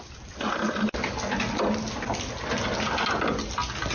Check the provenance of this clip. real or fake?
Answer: real